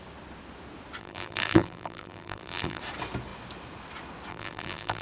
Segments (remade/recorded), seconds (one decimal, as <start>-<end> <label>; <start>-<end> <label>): 0.0-1.0 recorded; 1.0-2.8 remade; 2.8-4.3 recorded; 4.3-5.0 remade